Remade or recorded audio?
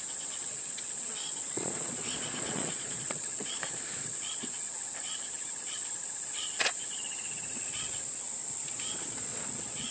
remade